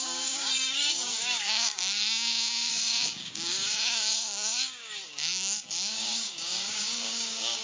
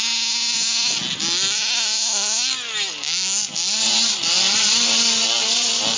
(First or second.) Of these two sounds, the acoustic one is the second